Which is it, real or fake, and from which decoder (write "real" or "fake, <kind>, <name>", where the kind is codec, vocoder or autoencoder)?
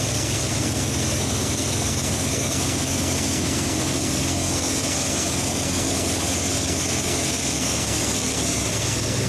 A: fake, codec, SNAC